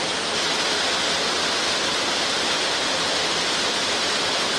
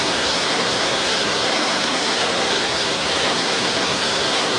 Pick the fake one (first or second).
second